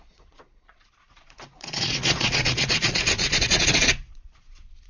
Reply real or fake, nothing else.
fake